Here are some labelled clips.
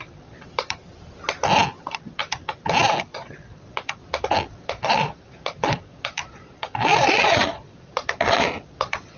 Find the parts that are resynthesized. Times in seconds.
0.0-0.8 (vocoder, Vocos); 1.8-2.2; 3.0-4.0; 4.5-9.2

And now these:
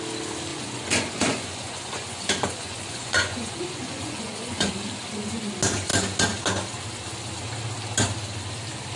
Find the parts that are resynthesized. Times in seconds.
0.5-4.7 (vocoder, Vocos)

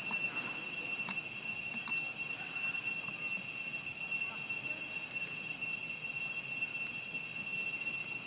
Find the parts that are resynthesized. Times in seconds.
none

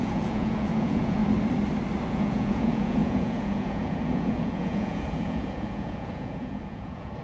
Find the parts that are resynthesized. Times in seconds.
0.0-1.2 (vocoder, Vocos); 2.1-7.2

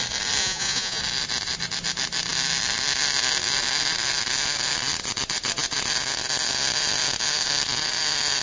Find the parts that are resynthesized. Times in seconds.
0.4-1.0 (vocoder, Vocos)

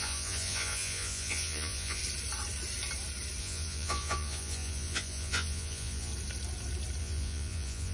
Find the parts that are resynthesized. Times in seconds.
0.0-2.0 (vocoder, Vocos); 3.4-6.1; 7.0-7.9

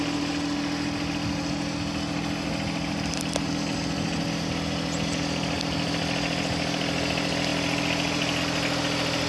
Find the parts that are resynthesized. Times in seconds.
none